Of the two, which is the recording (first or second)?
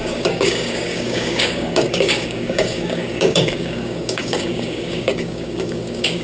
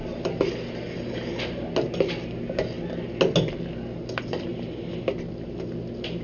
second